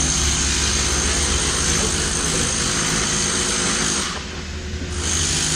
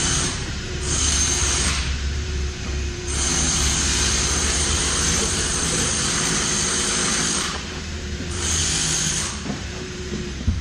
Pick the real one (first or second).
first